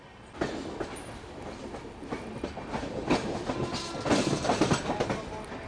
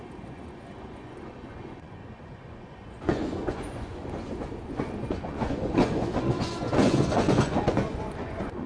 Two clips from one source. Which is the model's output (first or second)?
second